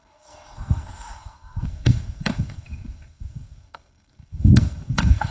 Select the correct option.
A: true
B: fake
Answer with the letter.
B